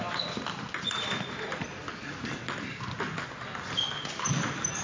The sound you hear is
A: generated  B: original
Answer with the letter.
B